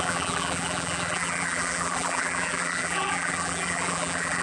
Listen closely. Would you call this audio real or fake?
fake